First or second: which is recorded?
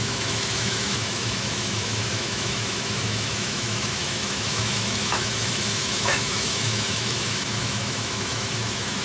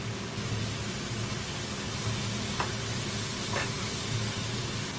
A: second